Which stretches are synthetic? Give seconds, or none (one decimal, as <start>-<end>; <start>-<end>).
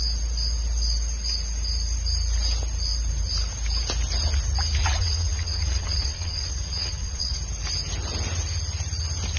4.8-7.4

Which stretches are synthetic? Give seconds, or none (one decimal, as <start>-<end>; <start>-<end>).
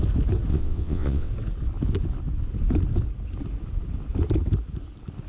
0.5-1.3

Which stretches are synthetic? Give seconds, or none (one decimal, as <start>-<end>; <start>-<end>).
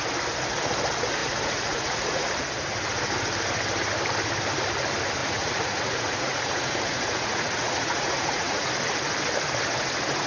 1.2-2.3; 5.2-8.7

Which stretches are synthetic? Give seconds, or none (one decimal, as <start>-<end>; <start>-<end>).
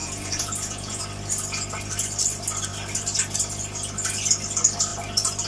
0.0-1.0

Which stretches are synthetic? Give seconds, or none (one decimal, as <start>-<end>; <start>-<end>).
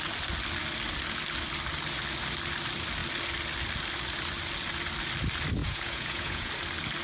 5.6-6.5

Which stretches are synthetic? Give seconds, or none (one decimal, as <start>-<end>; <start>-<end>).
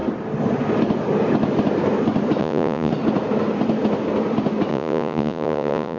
2.4-2.9; 4.7-6.0